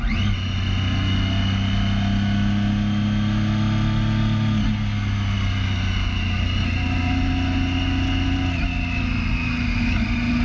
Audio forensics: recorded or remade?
recorded